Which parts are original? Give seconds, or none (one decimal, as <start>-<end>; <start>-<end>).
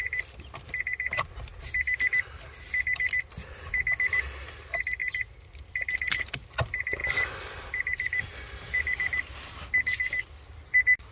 0.0-11.1